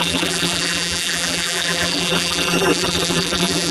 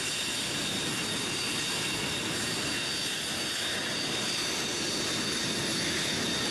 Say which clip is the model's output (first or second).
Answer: first